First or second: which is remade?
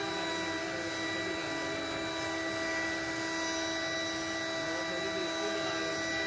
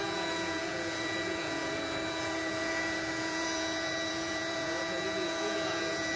second